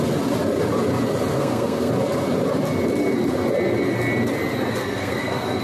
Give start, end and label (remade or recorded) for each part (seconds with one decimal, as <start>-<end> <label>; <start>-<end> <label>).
0.0-1.3 recorded; 1.3-1.9 remade; 1.9-4.7 recorded; 4.7-5.6 remade